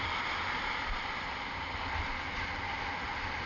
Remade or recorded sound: recorded